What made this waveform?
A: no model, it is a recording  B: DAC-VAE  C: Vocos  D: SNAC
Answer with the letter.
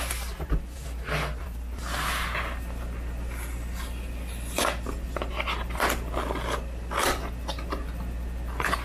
A